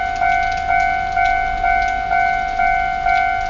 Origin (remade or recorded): recorded